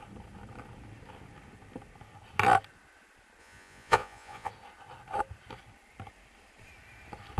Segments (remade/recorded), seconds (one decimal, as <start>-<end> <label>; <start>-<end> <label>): 0.0-3.4 recorded; 3.4-4.5 remade; 4.5-7.4 recorded